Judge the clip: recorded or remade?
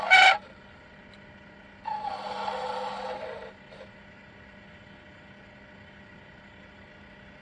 recorded